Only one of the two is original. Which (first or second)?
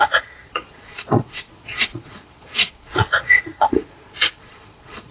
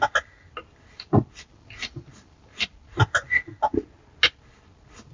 second